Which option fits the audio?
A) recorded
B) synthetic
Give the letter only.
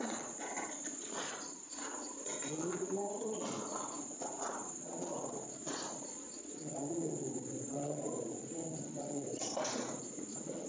B